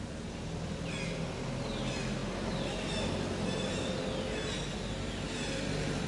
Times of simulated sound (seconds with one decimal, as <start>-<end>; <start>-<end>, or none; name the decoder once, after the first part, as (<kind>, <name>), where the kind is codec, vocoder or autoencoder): none